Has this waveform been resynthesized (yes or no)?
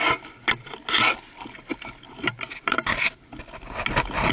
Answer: no